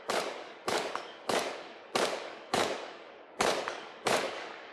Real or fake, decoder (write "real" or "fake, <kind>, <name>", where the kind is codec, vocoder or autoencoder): fake, codec, DAC